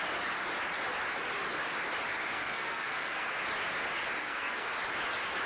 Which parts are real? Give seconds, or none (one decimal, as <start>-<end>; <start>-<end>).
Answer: 0.0-2.1; 3.3-4.2; 4.7-5.5